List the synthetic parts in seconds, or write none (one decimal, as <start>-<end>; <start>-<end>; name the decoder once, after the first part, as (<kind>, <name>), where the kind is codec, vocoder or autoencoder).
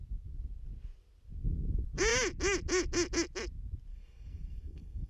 3.9-5.1 (codec, SNAC)